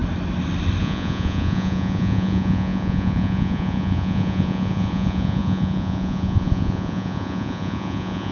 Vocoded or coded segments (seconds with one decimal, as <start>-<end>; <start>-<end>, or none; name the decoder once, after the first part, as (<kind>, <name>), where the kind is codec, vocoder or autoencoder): 0.8-8.3 (vocoder, Vocos)